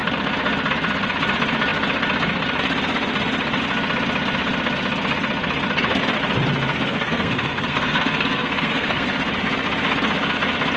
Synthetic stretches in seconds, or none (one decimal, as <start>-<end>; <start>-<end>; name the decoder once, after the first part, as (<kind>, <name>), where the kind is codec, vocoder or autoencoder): 6.7-9.3 (codec, SNAC)